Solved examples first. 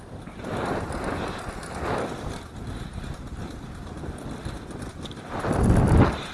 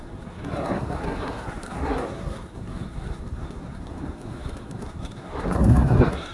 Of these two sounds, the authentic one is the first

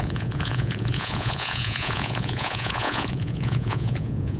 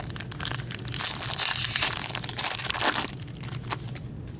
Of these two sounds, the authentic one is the second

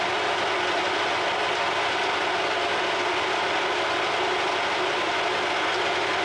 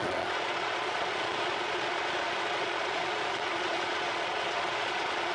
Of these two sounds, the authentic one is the first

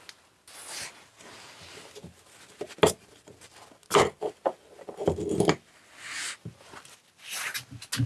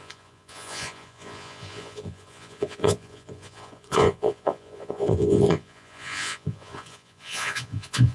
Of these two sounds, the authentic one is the first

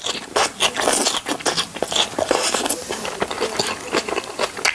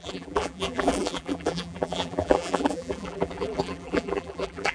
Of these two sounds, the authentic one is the first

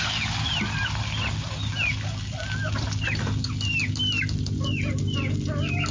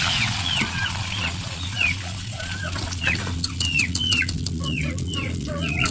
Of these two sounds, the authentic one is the first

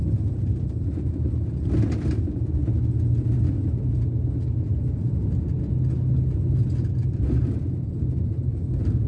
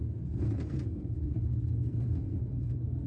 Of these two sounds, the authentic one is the first